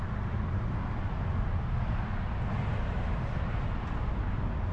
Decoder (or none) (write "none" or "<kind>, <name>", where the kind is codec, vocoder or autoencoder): none